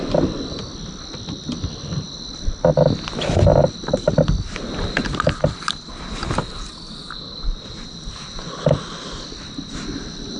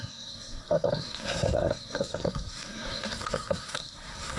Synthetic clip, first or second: second